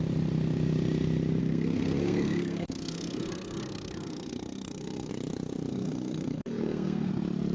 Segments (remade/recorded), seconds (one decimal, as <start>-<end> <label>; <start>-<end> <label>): 0.0-1.4 recorded; 1.4-5.1 remade; 5.1-5.7 recorded; 5.7-7.1 remade; 7.1-7.5 recorded